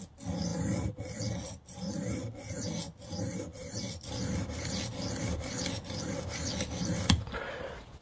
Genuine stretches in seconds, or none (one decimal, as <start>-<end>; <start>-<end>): 0.0-3.5; 4.7-8.0